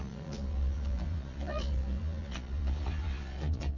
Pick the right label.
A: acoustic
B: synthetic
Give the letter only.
B